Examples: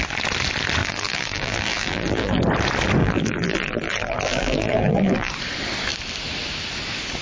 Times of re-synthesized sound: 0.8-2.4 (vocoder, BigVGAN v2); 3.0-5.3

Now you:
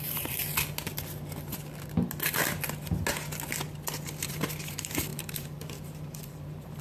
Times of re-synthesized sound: 0.0-0.4 (vocoder, BigVGAN v2); 4.3-6.8

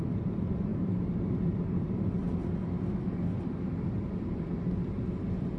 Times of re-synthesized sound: 0.0-2.2 (vocoder, BigVGAN v2)

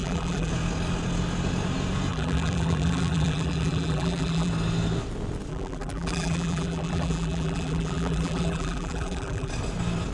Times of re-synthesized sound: 0.0-0.5 (vocoder, BigVGAN v2); 2.1-4.5; 5.5-9.5

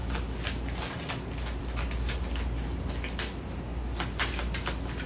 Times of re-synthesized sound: none